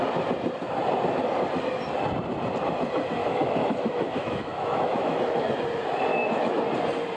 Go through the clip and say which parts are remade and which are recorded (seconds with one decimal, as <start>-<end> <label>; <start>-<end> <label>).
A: 0.0-3.2 recorded; 3.2-5.5 remade; 5.5-6.1 recorded; 6.1-6.6 remade; 6.6-7.2 recorded